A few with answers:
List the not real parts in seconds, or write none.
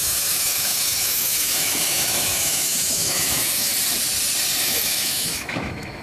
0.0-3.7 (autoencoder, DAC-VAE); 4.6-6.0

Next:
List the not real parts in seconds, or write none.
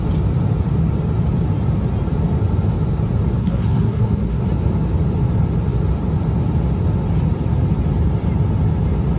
3.4-4.4 (codec, SNAC)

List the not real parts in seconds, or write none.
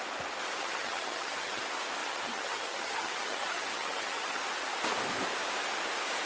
0.6-1.6 (vocoder, HiFi-GAN); 2.0-4.4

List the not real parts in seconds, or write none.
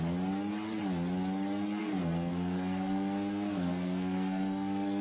1.8-5.0 (codec, SNAC)